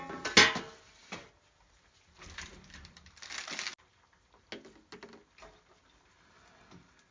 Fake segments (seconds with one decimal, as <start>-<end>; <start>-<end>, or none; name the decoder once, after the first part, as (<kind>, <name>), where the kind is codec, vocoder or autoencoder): none